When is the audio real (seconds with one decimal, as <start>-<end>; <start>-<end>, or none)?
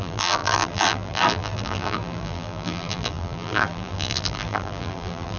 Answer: none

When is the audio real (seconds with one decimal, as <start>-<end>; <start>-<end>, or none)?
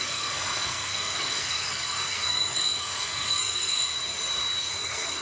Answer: 3.9-4.7